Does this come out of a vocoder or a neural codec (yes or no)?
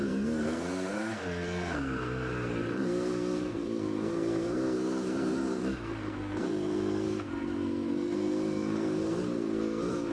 yes